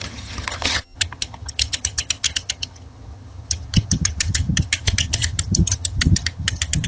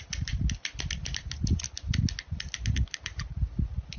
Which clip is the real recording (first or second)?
second